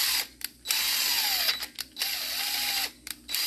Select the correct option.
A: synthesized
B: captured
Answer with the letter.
B